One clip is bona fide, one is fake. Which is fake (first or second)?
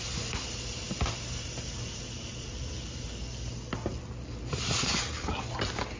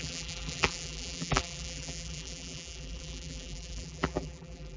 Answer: second